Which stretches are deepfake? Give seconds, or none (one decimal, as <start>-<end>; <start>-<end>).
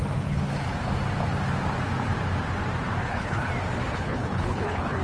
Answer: 0.0-0.7; 3.0-3.5; 3.9-5.0